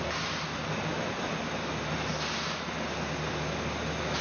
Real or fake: real